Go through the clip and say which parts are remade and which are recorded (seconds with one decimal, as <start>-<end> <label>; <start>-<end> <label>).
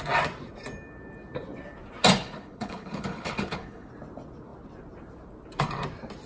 0.0-2.2 recorded; 2.2-3.9 remade; 3.9-6.3 recorded